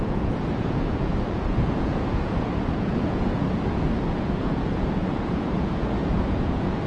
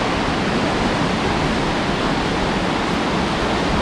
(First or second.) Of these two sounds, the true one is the second